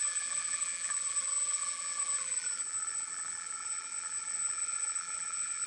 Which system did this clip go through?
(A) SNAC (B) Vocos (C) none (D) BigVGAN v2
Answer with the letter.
D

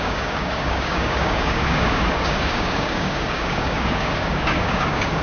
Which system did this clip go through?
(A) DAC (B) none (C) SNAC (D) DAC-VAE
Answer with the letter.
A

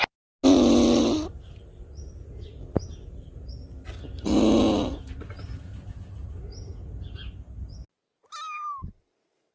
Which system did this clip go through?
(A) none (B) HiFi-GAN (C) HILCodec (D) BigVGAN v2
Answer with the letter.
A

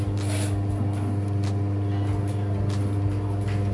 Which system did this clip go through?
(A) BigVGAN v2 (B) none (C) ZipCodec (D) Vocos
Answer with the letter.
B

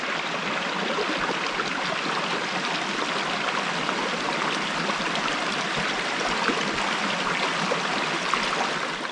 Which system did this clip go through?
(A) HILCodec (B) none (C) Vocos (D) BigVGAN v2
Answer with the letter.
B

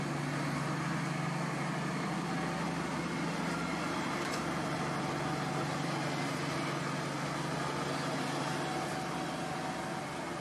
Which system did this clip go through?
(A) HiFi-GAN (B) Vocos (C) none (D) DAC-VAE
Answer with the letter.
C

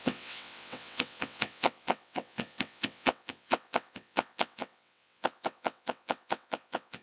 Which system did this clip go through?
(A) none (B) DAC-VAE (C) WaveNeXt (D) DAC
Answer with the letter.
C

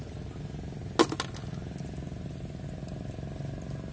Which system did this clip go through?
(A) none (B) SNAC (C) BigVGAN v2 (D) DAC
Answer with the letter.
A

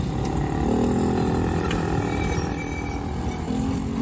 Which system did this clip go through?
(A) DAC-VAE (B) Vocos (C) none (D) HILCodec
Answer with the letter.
C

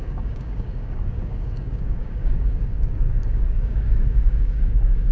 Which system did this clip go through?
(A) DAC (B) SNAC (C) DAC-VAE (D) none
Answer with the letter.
A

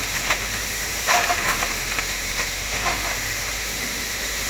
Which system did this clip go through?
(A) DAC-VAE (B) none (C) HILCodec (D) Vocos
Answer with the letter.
A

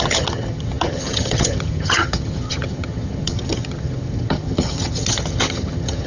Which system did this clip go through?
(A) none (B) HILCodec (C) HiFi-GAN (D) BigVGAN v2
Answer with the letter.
C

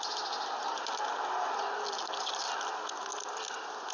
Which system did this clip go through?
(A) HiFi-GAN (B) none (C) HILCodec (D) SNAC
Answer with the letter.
B